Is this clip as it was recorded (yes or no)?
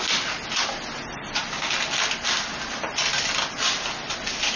yes